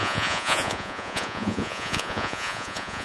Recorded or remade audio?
remade